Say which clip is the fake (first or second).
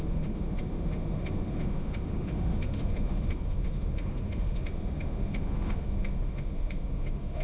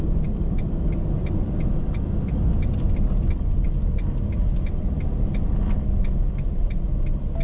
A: first